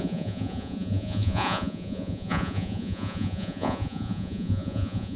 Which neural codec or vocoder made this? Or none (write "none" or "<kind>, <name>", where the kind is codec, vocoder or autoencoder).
vocoder, Vocos